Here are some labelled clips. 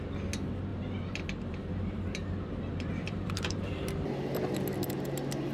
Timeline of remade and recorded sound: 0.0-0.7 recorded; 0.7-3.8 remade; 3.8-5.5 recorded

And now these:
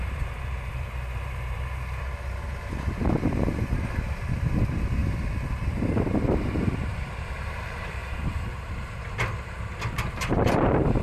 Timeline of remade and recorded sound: 0.0-11.0 remade

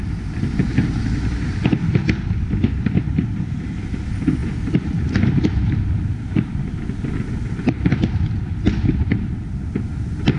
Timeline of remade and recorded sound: 0.0-0.6 recorded; 0.6-1.6 remade; 1.6-4.4 recorded; 4.4-8.2 remade; 8.2-10.4 recorded

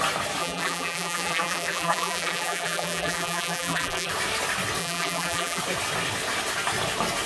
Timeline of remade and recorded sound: 0.0-0.4 recorded; 0.4-4.1 remade; 4.1-4.8 recorded; 4.8-5.6 remade; 5.6-7.3 recorded

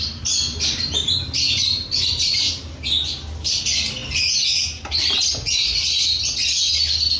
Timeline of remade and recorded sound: 0.0-0.5 recorded; 0.5-2.5 remade; 2.5-7.2 recorded